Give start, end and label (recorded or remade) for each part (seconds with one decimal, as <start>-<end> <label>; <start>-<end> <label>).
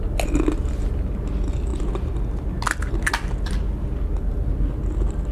0.0-5.3 recorded